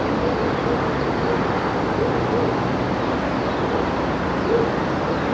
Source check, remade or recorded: recorded